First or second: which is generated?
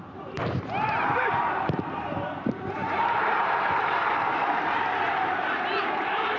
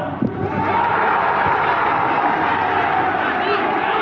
first